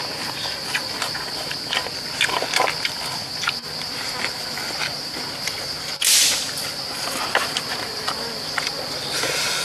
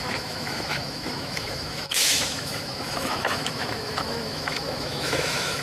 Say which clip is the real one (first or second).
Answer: first